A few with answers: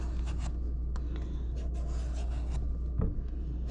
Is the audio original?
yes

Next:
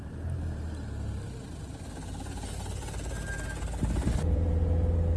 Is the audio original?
yes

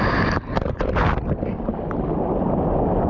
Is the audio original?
yes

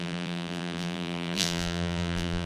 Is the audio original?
no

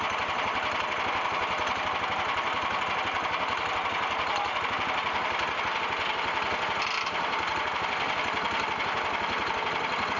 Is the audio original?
yes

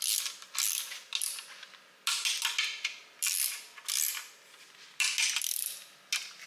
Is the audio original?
yes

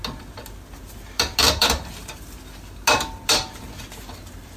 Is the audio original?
yes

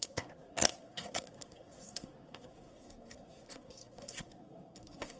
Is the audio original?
no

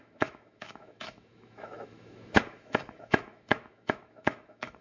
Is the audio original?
no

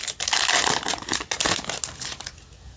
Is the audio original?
yes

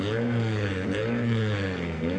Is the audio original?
no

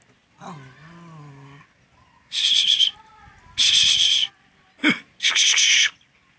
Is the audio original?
yes